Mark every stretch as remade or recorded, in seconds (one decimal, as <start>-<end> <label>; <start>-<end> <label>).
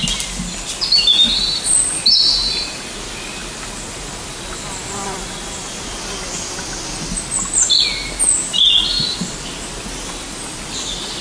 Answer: 0.0-11.2 recorded